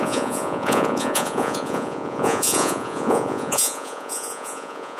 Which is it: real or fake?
fake